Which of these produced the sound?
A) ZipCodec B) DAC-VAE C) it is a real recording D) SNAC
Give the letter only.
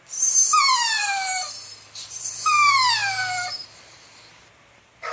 C